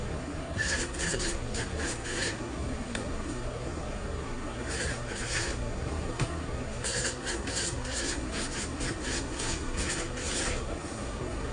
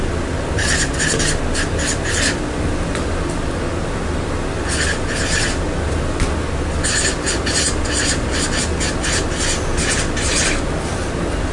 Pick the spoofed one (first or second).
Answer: first